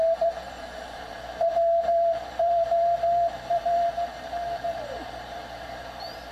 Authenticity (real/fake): fake